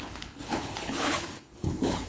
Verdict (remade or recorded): remade